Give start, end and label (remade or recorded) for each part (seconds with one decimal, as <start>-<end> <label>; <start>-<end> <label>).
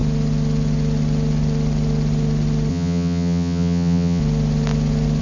0.0-2.7 recorded; 2.7-4.2 remade; 4.2-5.2 recorded